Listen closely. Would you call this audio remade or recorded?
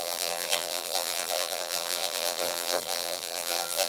remade